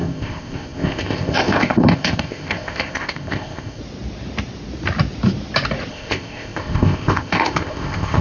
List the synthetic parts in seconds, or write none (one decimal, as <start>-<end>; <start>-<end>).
0.0-3.8; 5.9-8.2